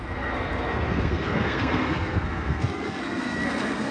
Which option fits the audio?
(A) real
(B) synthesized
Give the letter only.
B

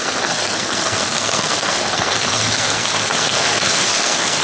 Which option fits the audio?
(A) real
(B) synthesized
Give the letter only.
B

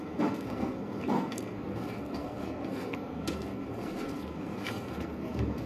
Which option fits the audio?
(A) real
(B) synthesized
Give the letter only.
B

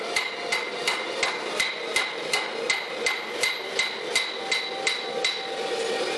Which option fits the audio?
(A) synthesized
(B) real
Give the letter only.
B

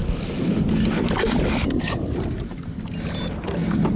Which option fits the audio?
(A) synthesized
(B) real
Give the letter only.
B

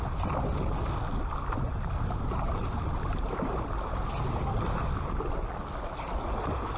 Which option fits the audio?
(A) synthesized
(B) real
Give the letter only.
B